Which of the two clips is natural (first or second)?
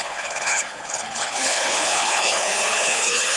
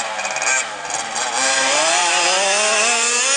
second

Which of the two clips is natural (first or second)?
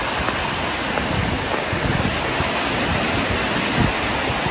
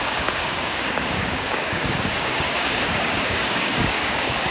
first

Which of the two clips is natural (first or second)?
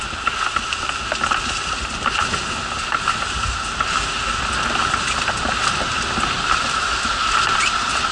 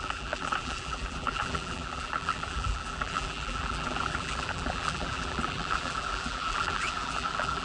first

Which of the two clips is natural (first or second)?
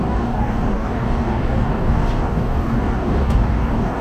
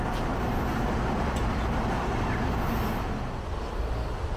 second